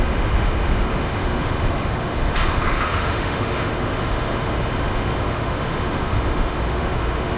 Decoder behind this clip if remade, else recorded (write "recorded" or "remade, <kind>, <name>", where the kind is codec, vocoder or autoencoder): remade, autoencoder, DAC-VAE